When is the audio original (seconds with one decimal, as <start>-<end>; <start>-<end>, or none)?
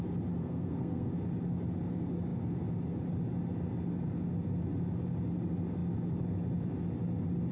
0.0-0.4; 1.1-7.5